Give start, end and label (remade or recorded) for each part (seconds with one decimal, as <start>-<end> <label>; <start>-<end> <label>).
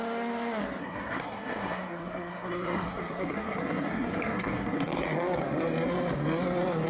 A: 0.0-0.8 recorded; 0.8-4.9 remade; 4.9-6.9 recorded